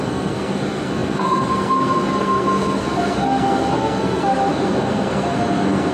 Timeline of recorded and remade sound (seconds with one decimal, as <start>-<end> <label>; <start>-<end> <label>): 0.0-5.9 remade